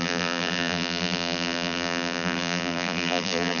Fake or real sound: fake